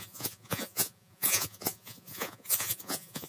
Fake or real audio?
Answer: fake